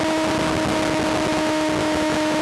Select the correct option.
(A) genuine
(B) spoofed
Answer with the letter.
A